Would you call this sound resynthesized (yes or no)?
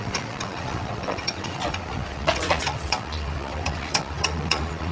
yes